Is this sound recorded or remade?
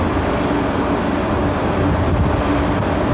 recorded